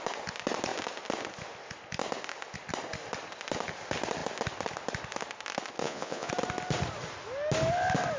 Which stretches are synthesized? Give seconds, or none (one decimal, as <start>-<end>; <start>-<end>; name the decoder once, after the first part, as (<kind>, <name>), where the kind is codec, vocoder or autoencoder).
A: 5.8-6.3 (vocoder, Vocos)